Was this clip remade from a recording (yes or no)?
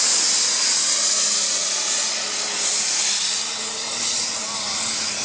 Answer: no